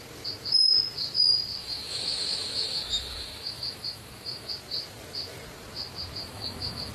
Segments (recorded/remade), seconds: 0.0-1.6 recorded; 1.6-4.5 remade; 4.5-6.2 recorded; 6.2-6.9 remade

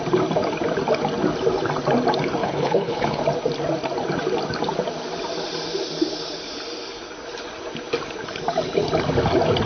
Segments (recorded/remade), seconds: 0.0-2.4 recorded; 2.4-3.2 remade; 3.2-9.7 recorded

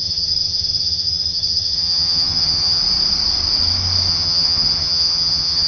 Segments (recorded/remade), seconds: 0.0-2.8 remade; 2.8-4.1 recorded; 4.1-5.7 remade

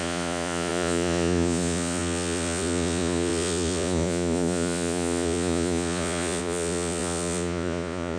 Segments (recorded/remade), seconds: 0.0-8.2 remade

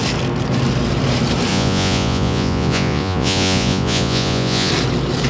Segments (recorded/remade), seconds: 0.0-1.5 recorded; 1.5-4.7 remade; 4.7-5.3 recorded

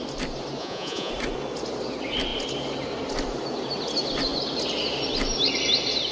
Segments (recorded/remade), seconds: 0.0-0.6 recorded; 0.6-1.1 remade; 1.1-6.1 recorded

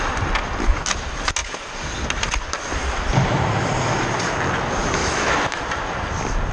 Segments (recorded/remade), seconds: 0.0-5.0 recorded; 5.0-5.6 remade; 5.6-6.5 recorded

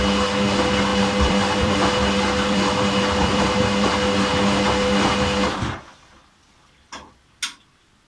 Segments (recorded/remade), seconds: 0.0-0.9 recorded; 0.9-5.8 remade; 5.8-8.1 recorded